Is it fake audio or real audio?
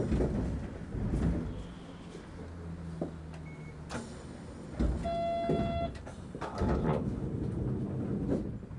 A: real